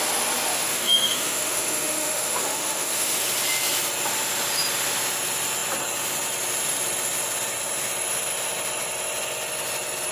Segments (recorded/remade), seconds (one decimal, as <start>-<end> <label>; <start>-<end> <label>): 0.0-0.5 recorded; 0.5-3.2 remade; 3.2-10.1 recorded